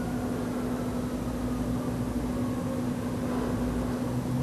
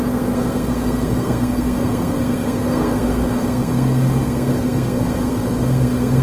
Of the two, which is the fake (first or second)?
second